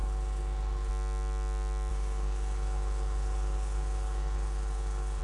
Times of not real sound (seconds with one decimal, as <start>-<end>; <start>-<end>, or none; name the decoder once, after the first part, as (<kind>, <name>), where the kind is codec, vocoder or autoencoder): 0.0-0.9 (codec, HILCodec); 1.9-5.2